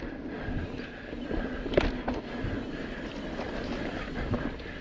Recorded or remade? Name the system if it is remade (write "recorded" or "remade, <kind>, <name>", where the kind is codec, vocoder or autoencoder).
recorded